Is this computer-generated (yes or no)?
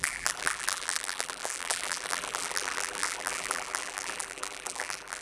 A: yes